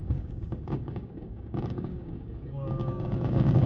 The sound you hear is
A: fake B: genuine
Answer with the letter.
A